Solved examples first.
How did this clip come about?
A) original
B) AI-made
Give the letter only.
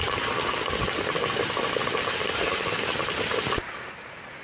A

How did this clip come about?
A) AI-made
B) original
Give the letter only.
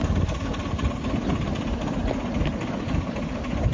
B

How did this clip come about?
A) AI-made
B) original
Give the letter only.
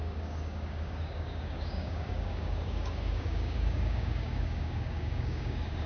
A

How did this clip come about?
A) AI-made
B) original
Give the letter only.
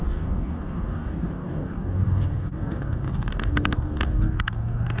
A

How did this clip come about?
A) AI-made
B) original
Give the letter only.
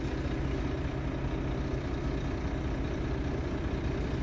B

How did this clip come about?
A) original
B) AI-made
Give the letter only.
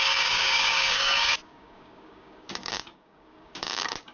B